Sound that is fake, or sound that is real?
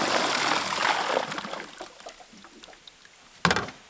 real